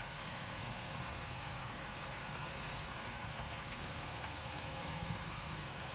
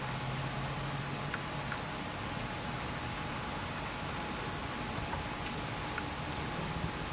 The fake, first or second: first